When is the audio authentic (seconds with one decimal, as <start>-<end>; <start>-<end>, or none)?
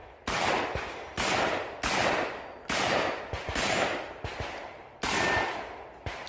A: 0.0-6.3